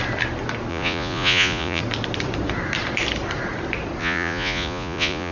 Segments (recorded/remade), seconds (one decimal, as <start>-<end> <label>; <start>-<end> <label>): 0.0-0.7 recorded; 0.7-1.8 remade; 1.8-4.0 recorded; 4.0-5.3 remade